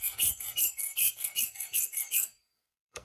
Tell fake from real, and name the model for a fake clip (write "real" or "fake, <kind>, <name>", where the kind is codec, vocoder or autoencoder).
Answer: fake, codec, SNAC